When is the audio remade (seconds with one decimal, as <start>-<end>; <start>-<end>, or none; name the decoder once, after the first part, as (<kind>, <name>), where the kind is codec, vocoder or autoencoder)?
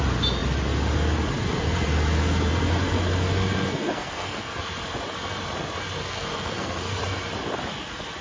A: 3.7-4.6 (codec, SNAC); 6.0-7.0